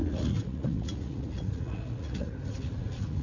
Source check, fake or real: fake